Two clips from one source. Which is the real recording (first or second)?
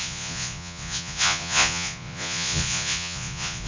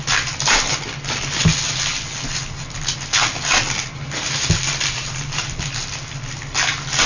second